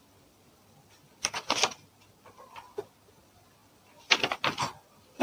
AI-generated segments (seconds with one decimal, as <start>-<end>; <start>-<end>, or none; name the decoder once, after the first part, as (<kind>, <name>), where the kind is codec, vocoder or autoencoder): none